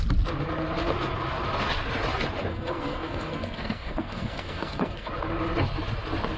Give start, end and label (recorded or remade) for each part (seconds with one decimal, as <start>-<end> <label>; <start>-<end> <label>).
0.0-2.5 recorded; 2.5-5.1 remade; 5.1-6.4 recorded